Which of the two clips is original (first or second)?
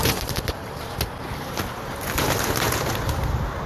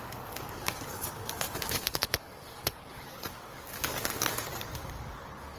first